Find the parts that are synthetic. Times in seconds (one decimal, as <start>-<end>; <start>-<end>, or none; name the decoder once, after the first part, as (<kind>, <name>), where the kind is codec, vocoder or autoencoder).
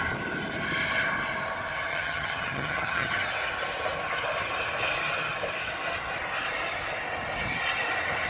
1.9-3.1 (vocoder, HiFi-GAN)